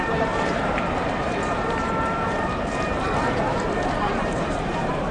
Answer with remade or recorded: remade